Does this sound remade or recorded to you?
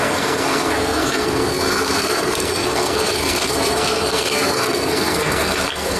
remade